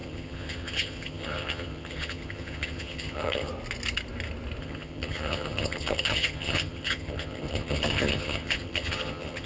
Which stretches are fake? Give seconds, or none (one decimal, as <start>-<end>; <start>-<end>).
0.0-3.5; 4.6-9.5